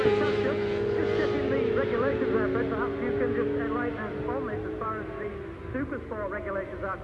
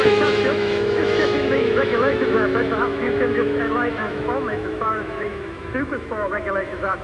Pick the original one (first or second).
first